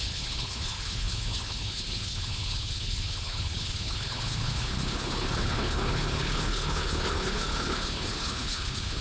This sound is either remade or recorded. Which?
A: remade